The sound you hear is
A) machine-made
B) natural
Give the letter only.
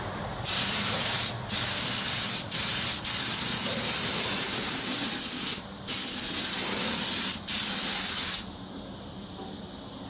B